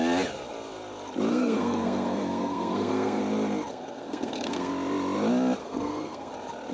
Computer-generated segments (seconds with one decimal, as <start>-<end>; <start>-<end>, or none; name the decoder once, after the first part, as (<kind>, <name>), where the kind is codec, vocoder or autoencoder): 1.3-3.2 (codec, SNAC); 3.7-4.7; 5.6-6.3